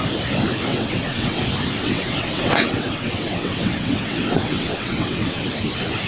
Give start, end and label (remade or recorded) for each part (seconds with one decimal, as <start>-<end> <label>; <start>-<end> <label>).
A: 0.0-0.7 recorded; 0.7-1.4 remade; 1.4-1.8 recorded; 1.8-5.5 remade; 5.5-6.1 recorded